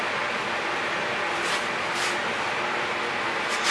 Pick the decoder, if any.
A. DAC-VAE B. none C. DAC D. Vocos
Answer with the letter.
B